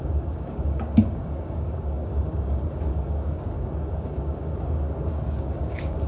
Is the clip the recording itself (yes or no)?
no